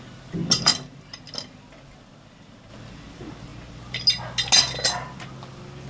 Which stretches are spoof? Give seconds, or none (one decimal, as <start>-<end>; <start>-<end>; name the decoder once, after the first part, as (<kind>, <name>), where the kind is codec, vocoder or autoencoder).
none